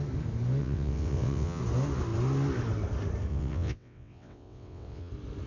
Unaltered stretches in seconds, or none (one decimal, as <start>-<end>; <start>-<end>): 0.0-0.6; 1.6-3.3; 5.1-5.5